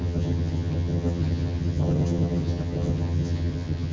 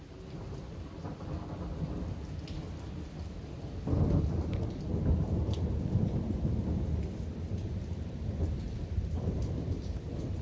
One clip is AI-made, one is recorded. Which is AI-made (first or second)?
first